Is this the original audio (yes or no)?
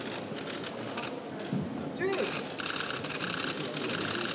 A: yes